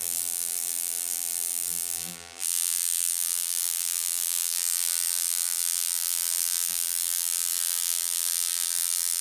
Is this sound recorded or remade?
remade